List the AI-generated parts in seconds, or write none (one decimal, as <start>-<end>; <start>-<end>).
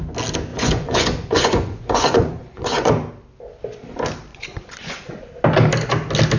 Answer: 0.5-2.9; 4.3-5.3